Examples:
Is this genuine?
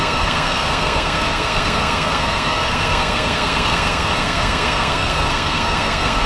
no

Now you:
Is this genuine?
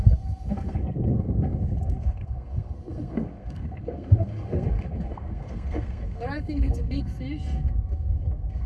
no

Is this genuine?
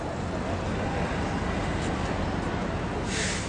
yes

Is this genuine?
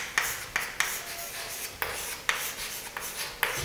yes